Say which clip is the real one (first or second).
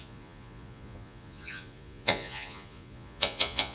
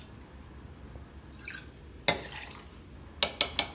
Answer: second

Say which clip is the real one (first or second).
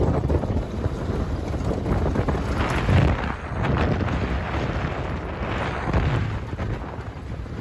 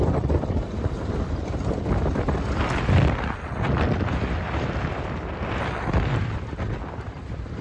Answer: first